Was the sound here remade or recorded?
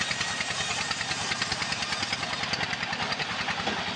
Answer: recorded